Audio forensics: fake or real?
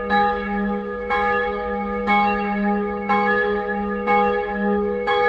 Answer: fake